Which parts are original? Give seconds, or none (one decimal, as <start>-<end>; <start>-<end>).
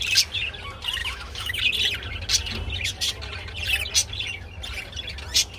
0.0-1.0; 1.6-5.6